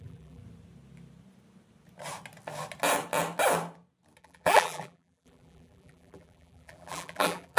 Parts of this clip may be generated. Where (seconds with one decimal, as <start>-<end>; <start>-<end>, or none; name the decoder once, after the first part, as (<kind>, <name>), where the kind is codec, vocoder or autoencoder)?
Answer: 0.0-0.4 (vocoder, BigVGAN v2); 4.2-7.6